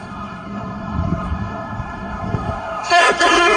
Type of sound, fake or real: fake